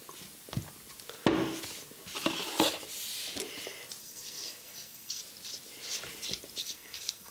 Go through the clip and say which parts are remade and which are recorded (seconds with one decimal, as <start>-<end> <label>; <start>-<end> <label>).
0.0-4.0 recorded; 4.0-5.2 remade; 5.2-6.6 recorded; 6.6-7.3 remade

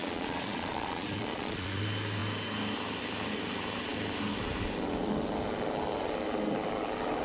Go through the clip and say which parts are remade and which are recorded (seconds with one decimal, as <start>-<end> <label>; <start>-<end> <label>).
0.0-1.8 remade; 1.8-7.2 recorded

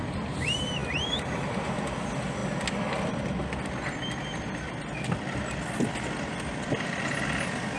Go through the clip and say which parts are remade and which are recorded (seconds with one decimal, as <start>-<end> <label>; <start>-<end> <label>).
0.0-0.8 recorded; 0.8-1.7 remade; 1.7-7.8 recorded

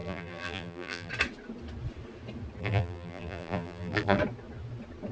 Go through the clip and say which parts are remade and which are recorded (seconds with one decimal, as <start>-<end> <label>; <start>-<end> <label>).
0.0-1.1 remade; 1.1-2.6 recorded; 2.6-4.2 remade; 4.2-5.1 recorded

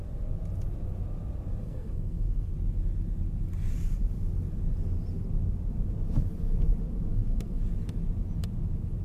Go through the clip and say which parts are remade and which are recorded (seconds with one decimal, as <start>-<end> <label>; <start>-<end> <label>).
0.0-1.6 recorded; 1.6-2.5 remade; 2.5-7.1 recorded; 7.1-7.6 remade; 7.6-9.0 recorded

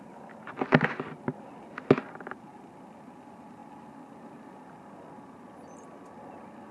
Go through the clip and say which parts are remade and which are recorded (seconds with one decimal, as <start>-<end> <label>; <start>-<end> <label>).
0.0-6.7 recorded

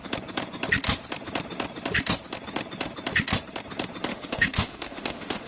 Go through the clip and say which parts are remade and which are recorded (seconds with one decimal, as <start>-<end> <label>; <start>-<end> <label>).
0.0-4.1 recorded; 4.1-5.5 remade